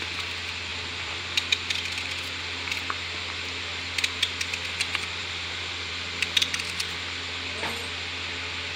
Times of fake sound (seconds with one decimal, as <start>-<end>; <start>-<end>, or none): 0.7-1.2; 5.2-5.9